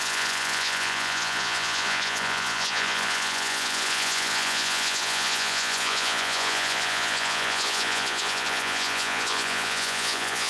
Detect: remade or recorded remade